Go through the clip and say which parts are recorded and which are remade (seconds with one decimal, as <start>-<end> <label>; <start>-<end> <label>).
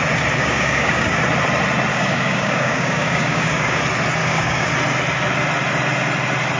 0.0-0.4 recorded; 0.4-1.2 remade; 1.2-1.9 recorded; 1.9-3.8 remade; 3.8-4.2 recorded; 4.2-4.7 remade; 4.7-6.6 recorded